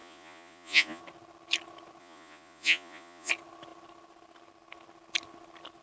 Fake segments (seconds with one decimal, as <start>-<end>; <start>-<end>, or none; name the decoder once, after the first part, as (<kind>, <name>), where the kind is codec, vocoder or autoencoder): 0.0-1.0 (vocoder, Vocos); 2.0-3.3